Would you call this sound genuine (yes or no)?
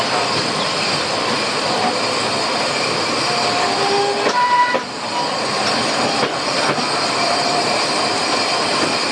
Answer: yes